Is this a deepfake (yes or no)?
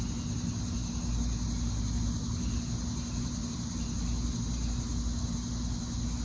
no